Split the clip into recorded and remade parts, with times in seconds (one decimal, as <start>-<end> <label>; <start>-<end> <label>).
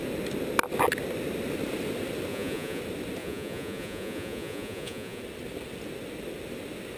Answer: 0.0-2.3 recorded; 2.3-2.8 remade; 2.8-3.2 recorded; 3.2-5.2 remade; 5.2-7.0 recorded